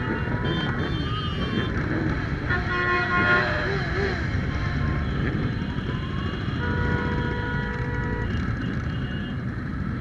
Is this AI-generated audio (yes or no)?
no